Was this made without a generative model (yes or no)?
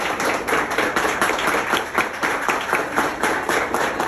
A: no